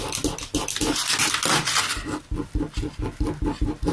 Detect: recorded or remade recorded